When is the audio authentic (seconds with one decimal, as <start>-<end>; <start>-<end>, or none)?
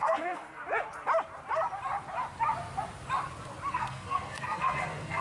0.6-3.7